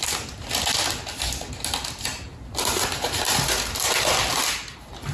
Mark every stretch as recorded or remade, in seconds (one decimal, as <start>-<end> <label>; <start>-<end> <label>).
0.0-5.1 recorded